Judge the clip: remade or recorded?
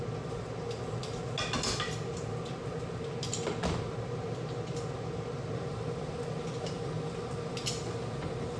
recorded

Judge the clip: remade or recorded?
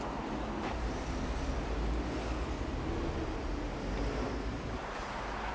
recorded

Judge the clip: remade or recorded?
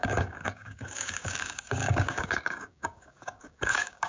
remade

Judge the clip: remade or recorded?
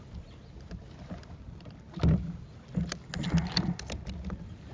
recorded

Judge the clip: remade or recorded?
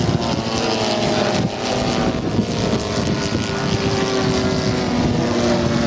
recorded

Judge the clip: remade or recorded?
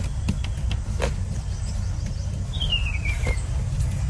recorded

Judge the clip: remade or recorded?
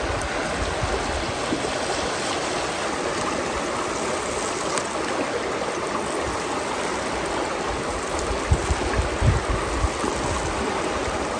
recorded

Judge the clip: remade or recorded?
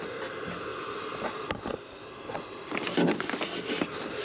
recorded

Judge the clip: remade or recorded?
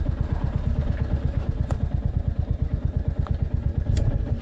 recorded